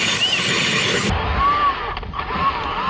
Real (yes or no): yes